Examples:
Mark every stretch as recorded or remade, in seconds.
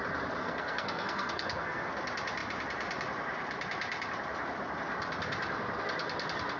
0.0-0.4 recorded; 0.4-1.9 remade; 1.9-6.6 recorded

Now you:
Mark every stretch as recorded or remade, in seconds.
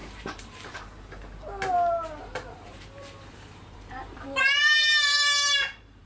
0.0-0.7 remade; 0.7-2.2 recorded; 2.2-6.1 remade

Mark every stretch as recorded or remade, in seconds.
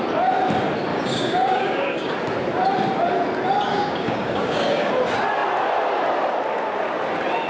0.0-0.9 recorded; 0.9-2.1 remade; 2.1-3.7 recorded; 3.7-4.9 remade; 4.9-7.5 recorded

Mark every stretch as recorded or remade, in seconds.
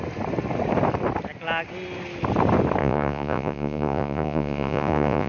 0.0-2.8 recorded; 2.8-5.3 remade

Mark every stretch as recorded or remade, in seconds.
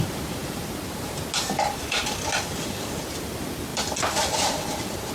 0.0-2.0 recorded; 2.0-3.1 remade; 3.1-3.7 recorded; 3.7-5.1 remade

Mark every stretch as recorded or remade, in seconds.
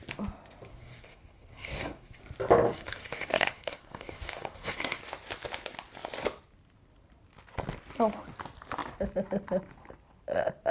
0.0-0.7 recorded; 0.7-2.2 remade; 2.2-2.7 recorded; 2.7-5.0 remade; 5.0-10.7 recorded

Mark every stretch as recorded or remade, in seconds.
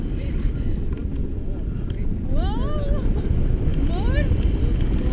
0.0-5.1 recorded